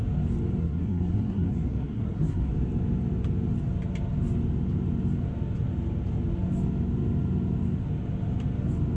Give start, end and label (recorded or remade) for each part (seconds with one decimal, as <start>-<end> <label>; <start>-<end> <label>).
0.0-0.6 recorded; 0.6-2.5 remade; 2.5-9.0 recorded